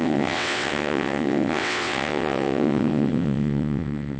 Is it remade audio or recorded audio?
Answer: remade